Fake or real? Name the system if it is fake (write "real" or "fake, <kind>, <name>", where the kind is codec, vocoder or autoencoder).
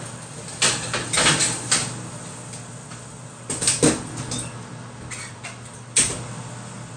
real